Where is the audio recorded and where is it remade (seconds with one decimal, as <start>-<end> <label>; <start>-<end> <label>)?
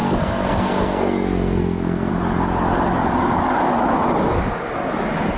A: 0.0-2.1 remade; 2.1-5.4 recorded